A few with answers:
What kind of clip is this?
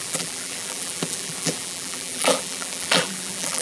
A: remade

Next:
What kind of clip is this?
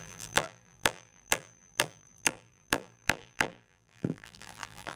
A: remade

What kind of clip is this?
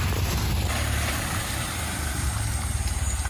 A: remade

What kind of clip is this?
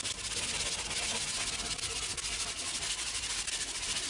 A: recorded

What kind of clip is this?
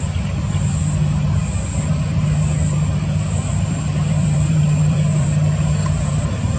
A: remade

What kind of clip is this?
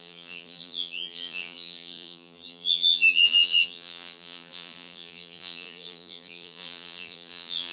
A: remade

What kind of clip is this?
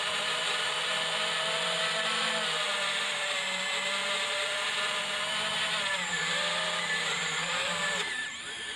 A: remade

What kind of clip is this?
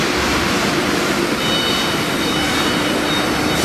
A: remade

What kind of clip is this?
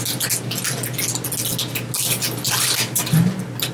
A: recorded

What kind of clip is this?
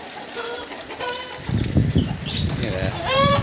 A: remade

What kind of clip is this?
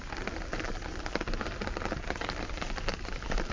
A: recorded